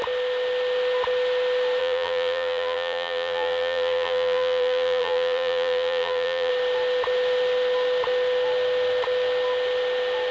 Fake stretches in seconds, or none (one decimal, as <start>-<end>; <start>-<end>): 1.8-6.5